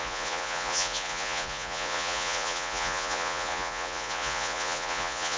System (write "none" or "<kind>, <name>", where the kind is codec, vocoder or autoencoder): vocoder, Vocos